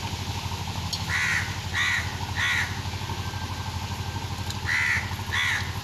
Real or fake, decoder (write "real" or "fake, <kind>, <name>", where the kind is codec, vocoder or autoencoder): real